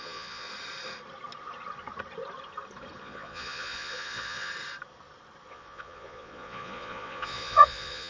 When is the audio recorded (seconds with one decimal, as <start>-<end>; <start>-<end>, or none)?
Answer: 0.5-3.0; 4.5-5.5